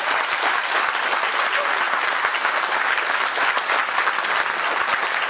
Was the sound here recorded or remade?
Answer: recorded